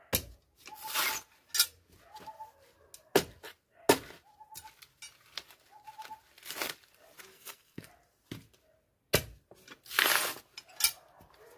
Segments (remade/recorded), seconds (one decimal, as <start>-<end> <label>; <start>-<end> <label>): 0.0-7.3 recorded; 7.3-7.9 remade; 7.9-11.6 recorded